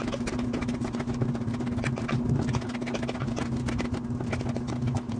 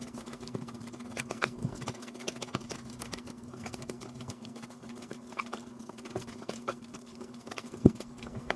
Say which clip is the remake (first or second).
second